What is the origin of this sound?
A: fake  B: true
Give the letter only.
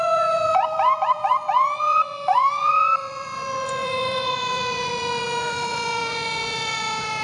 A